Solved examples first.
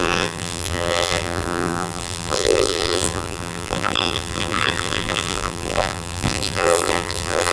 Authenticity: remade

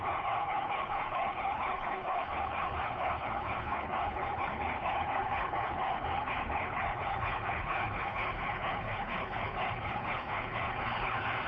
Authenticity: remade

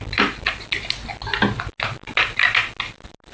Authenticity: recorded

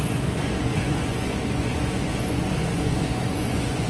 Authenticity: remade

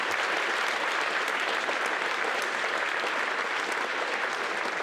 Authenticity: recorded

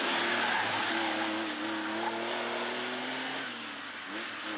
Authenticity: recorded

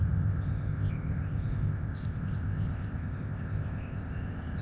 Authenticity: remade